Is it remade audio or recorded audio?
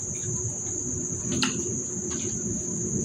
recorded